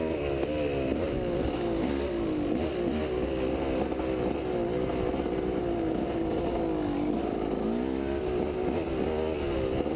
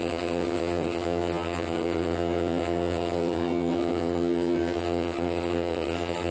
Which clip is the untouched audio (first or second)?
first